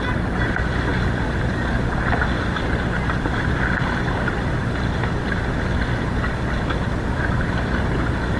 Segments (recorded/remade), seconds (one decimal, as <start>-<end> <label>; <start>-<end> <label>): 0.0-8.4 recorded